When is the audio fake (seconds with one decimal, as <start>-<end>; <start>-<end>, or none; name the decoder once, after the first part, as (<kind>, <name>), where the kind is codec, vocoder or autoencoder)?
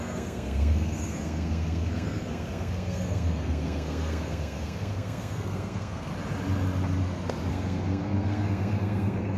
0.0-6.1 (codec, SNAC); 7.5-9.4